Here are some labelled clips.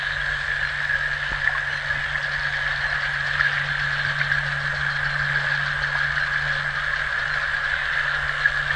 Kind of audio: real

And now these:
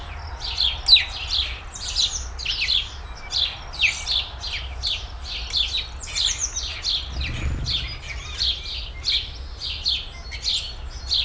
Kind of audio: real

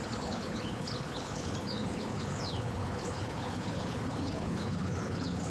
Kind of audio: fake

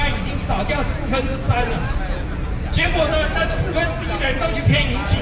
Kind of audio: real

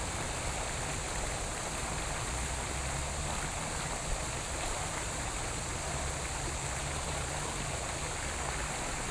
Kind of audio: real